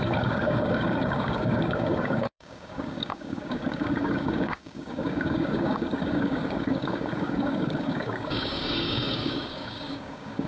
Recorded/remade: remade